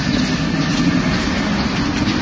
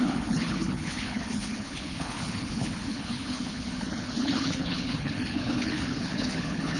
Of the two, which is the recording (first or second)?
first